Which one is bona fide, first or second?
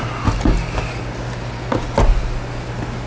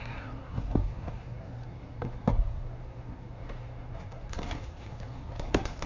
first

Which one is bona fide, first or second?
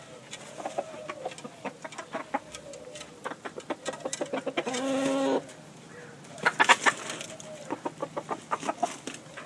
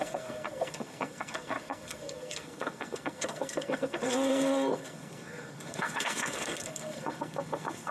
first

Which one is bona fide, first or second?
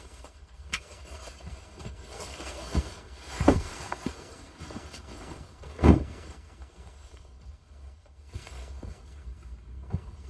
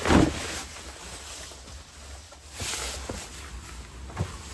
second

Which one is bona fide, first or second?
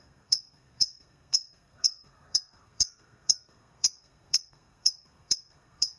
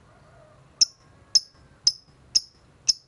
second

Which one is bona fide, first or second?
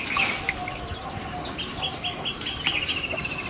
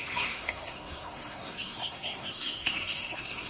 first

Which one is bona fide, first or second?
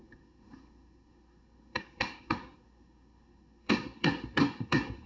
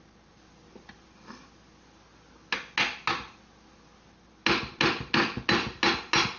second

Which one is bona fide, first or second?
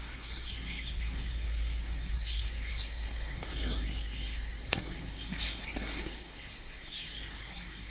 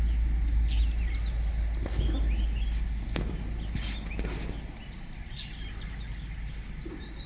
second